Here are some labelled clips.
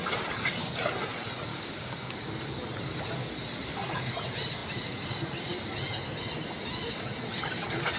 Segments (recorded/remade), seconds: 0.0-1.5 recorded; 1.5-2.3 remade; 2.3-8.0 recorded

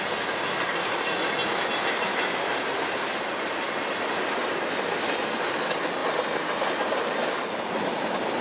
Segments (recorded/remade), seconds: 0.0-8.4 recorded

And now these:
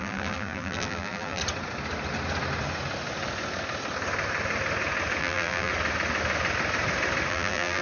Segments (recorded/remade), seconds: 0.0-1.4 remade; 1.4-5.2 recorded; 5.2-5.7 remade; 5.7-7.3 recorded; 7.3-7.8 remade